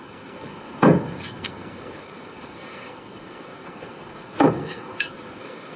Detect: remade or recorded remade